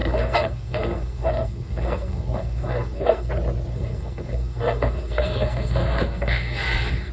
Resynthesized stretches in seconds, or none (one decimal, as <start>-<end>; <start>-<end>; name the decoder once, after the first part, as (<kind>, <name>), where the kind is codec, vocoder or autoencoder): 0.0-3.3 (codec, SNAC); 3.7-7.1